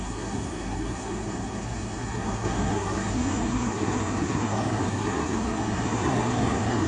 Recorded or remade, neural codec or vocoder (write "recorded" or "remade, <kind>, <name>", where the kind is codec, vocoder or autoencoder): remade, codec, SNAC